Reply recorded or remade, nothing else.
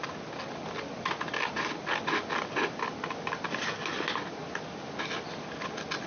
recorded